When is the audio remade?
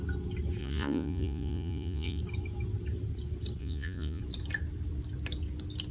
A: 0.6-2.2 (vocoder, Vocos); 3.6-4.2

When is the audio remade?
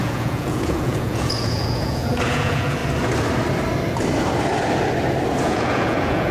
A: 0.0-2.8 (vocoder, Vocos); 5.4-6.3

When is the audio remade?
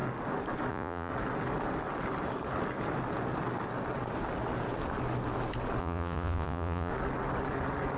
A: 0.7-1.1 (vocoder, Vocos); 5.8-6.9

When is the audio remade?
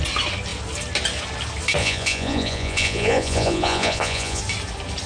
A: 1.8-4.4 (vocoder, Vocos)